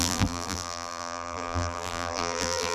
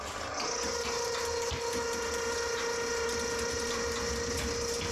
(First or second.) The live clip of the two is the second